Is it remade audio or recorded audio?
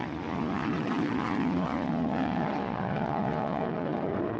remade